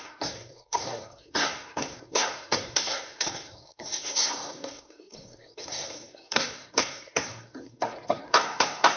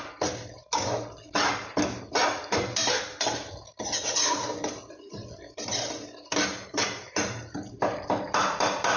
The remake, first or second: first